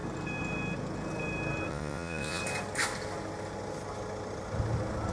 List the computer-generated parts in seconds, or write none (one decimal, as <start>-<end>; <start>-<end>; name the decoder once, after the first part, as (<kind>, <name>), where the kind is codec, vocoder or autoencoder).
1.7-2.4 (vocoder, Vocos)